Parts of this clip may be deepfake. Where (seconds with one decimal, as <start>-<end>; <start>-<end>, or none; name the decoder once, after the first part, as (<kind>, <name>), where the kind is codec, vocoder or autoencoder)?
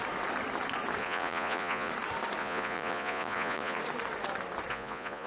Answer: 1.0-1.9 (vocoder, Vocos); 2.4-3.8; 4.7-5.3